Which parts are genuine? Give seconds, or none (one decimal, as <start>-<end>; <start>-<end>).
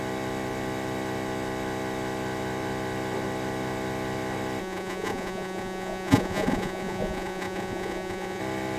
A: 0.0-4.6; 8.4-8.8